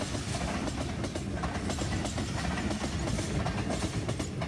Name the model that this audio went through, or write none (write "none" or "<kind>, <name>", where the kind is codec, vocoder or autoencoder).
none